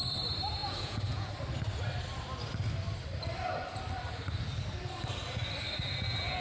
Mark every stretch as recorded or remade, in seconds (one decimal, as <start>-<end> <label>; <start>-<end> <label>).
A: 0.0-0.6 recorded; 0.6-1.3 remade; 1.3-6.4 recorded